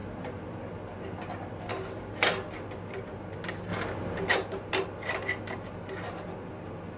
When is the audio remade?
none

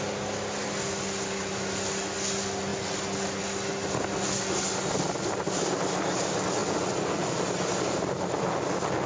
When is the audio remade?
none